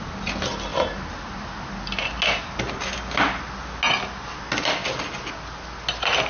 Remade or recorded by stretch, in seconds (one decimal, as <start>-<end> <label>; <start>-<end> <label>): 0.0-0.7 recorded; 0.7-1.7 remade; 1.7-6.3 recorded